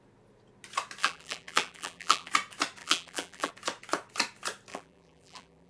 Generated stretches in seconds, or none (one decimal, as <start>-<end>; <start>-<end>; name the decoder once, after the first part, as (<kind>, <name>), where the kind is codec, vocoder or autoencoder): 1.0-2.3 (vocoder, BigVGAN v2); 2.8-3.5; 4.7-5.7